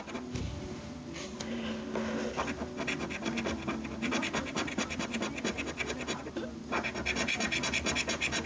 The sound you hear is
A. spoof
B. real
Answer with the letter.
B